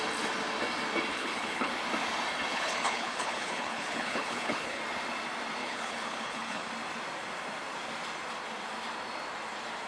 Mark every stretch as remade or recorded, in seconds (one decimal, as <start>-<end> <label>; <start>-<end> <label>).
0.0-1.1 recorded; 1.1-1.7 remade; 1.7-2.5 recorded; 2.5-4.8 remade; 4.8-5.6 recorded; 5.6-6.7 remade; 6.7-9.9 recorded

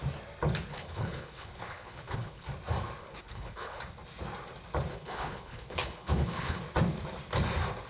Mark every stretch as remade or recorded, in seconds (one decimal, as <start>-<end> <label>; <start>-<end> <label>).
0.0-0.7 recorded; 0.7-2.5 remade; 2.5-3.0 recorded; 3.0-3.8 remade; 3.8-4.9 recorded; 4.9-6.6 remade; 6.6-7.9 recorded

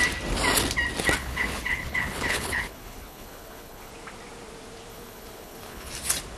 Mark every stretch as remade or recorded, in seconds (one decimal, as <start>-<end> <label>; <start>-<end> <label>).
0.0-1.2 recorded; 1.2-3.9 remade; 3.9-4.9 recorded; 4.9-5.9 remade; 5.9-6.4 recorded

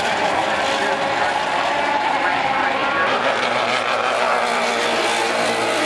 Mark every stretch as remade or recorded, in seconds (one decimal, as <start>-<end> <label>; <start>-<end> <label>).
0.0-5.9 recorded

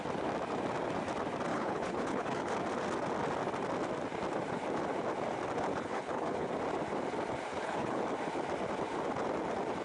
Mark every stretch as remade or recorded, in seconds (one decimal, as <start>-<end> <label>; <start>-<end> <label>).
0.0-1.5 recorded; 1.5-2.5 remade; 2.5-5.7 recorded; 5.7-6.5 remade; 6.5-7.5 recorded; 7.5-8.0 remade; 8.0-9.8 recorded

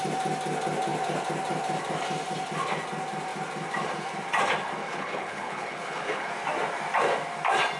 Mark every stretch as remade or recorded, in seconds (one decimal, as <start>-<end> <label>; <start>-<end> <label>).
0.0-4.8 recorded; 4.8-6.3 remade; 6.3-7.8 recorded

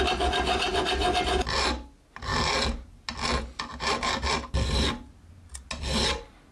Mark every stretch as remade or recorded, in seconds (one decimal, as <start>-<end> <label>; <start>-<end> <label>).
0.0-6.5 recorded